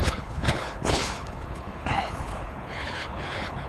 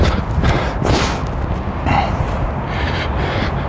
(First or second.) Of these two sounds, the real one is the second